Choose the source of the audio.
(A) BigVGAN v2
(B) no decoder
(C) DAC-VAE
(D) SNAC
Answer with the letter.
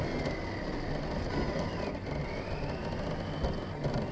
B